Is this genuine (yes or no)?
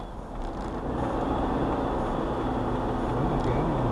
yes